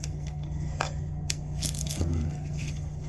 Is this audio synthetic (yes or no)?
yes